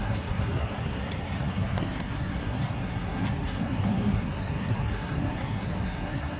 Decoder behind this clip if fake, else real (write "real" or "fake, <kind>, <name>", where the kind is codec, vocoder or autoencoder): fake, codec, SNAC